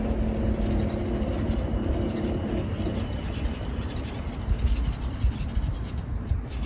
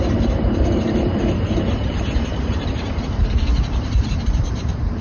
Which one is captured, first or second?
first